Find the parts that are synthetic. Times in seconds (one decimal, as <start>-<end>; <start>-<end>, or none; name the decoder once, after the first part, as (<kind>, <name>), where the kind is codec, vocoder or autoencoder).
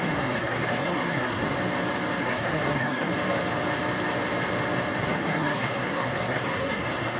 0.0-1.6 (codec, SNAC); 2.2-3.1; 5.0-7.2